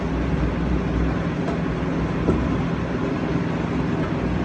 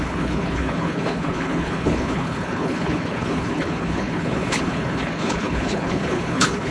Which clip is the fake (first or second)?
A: second